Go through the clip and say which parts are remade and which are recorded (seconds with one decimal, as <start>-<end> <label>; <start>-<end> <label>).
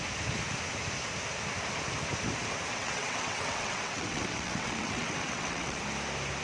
0.0-2.7 recorded; 2.7-5.8 remade; 5.8-6.4 recorded